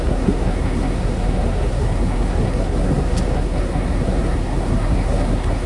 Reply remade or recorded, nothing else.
remade